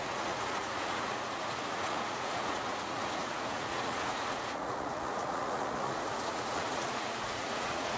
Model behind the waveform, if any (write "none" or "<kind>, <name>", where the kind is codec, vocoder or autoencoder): vocoder, Vocos